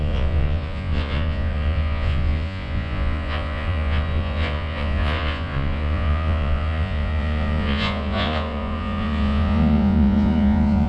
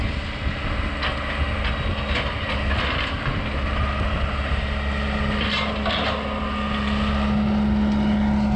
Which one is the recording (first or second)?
second